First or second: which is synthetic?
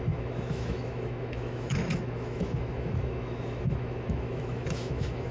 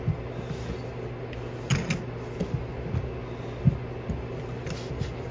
first